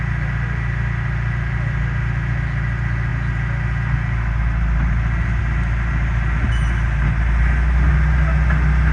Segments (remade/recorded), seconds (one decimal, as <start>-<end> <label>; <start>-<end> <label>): 0.0-8.9 recorded